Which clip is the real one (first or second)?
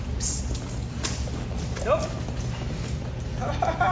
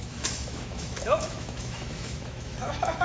first